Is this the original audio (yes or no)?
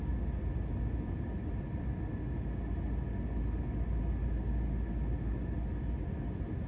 yes